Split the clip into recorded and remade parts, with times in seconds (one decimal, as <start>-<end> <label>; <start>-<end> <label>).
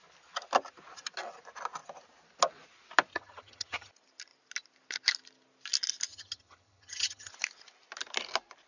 0.0-3.1 recorded; 3.1-3.9 remade; 3.9-6.1 recorded; 6.1-7.3 remade; 7.3-8.7 recorded